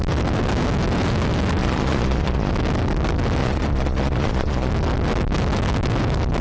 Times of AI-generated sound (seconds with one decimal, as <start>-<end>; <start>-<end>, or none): 1.6-2.5; 3.4-4.7